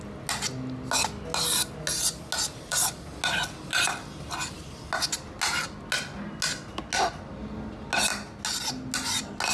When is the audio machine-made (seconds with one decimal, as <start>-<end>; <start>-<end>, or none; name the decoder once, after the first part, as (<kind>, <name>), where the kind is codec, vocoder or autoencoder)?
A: none